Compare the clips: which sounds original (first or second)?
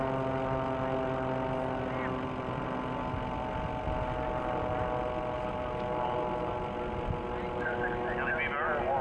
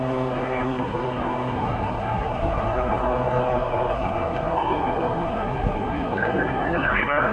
first